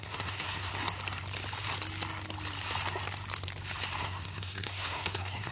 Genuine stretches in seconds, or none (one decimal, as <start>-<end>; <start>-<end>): 0.7-4.0